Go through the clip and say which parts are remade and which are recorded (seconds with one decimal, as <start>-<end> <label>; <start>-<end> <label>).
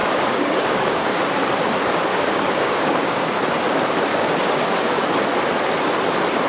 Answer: 0.0-1.3 remade; 1.3-2.1 recorded; 2.1-3.3 remade; 3.3-4.1 recorded; 4.1-5.0 remade; 5.0-6.5 recorded